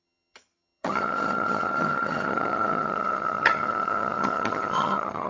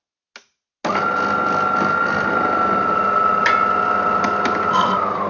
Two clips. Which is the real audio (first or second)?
second